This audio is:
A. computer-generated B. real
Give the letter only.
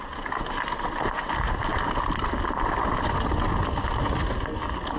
B